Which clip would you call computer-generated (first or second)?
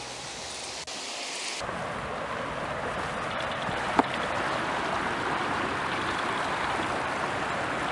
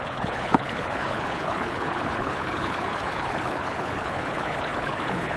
second